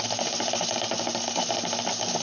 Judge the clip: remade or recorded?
recorded